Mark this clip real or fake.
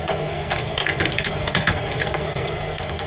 fake